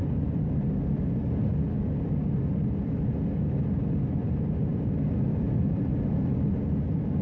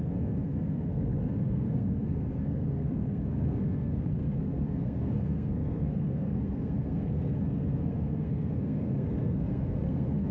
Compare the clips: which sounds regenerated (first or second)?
second